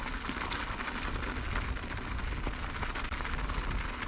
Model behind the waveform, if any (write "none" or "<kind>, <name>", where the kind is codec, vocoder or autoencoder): none